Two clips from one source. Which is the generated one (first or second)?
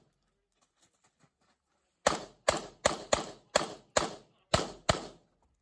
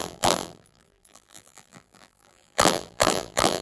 second